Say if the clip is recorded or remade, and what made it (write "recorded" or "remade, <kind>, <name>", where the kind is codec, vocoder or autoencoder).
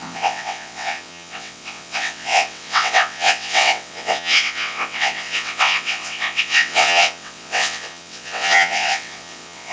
remade, vocoder, WaveNeXt